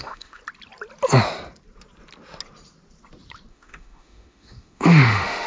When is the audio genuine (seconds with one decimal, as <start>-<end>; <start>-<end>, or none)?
0.4-3.5